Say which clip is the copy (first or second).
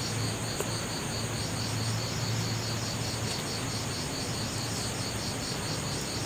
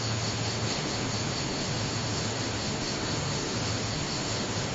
second